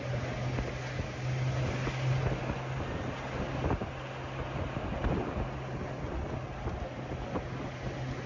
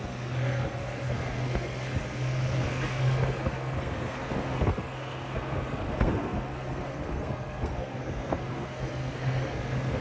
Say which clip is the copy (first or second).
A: second